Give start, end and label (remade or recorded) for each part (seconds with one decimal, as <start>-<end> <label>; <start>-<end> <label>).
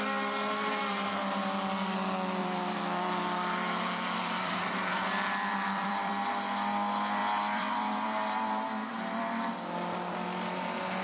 0.0-2.4 recorded; 2.4-6.1 remade; 6.1-7.2 recorded; 7.2-9.5 remade; 9.5-11.0 recorded